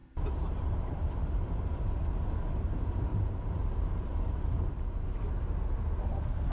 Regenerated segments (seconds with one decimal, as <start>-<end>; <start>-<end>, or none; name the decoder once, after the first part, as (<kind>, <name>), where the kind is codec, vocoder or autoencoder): 0.0-2.2 (vocoder, BigVGAN v2); 3.1-5.2